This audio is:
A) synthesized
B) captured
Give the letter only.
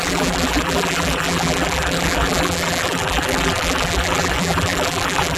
A